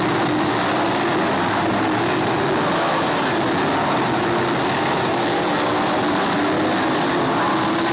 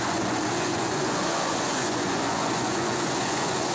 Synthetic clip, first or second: second